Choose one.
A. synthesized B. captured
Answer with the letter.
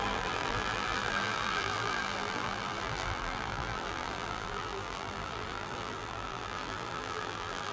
A